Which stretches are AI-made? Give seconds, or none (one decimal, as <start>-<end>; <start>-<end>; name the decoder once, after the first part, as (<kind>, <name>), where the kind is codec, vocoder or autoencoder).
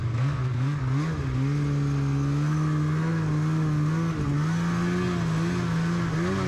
0.0-0.8 (codec, SNAC)